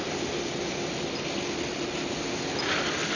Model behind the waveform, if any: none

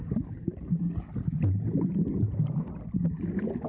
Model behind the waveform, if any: none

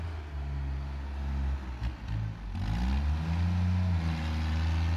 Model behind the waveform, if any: none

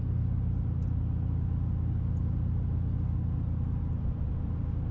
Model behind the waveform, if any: none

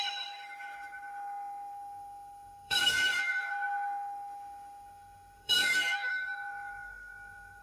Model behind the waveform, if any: autoencoder, DAC-VAE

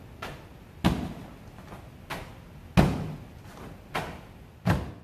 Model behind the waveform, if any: none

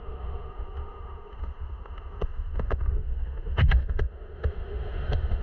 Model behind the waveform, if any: autoencoder, DAC-VAE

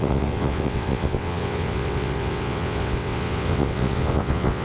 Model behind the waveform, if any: vocoder, WaveNeXt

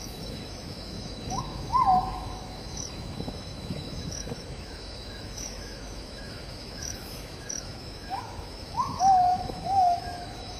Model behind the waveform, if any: autoencoder, DAC-VAE